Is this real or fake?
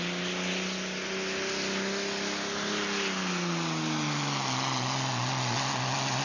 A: real